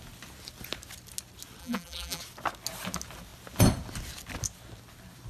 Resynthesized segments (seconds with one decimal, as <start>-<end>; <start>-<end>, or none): 1.6-2.2